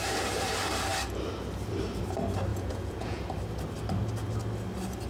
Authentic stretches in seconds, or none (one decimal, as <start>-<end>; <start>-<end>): 0.0-2.5; 3.2-5.1